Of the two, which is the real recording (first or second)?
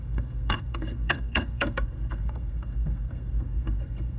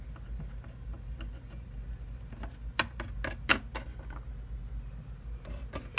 second